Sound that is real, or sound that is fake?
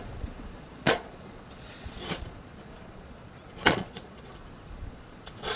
fake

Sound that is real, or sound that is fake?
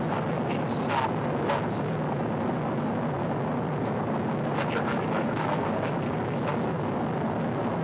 real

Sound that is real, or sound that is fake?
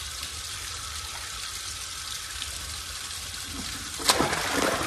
real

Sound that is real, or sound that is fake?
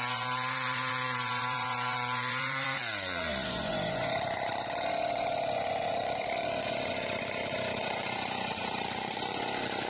fake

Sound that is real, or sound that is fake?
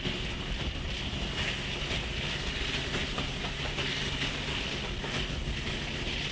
real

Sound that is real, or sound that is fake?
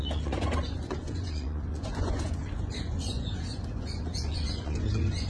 fake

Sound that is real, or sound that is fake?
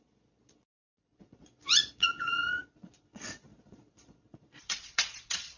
fake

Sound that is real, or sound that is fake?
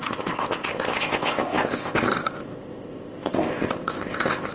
fake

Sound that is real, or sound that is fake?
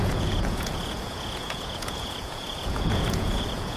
fake